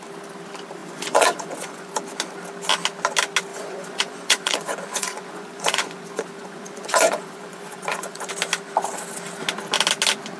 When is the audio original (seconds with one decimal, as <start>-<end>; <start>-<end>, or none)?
0.0-0.8; 1.9-3.5; 8.3-10.4